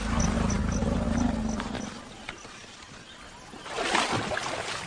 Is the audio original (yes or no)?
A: yes